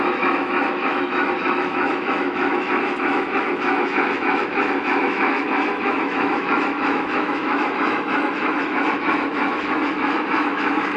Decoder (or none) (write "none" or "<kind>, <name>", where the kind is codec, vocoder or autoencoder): autoencoder, DAC-VAE